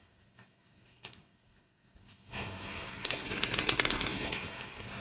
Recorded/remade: remade